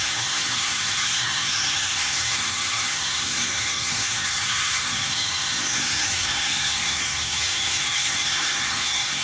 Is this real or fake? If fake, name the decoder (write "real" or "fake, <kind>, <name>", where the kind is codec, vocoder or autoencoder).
fake, codec, SNAC